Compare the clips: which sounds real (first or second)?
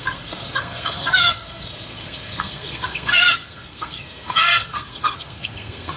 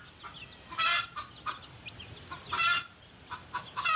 second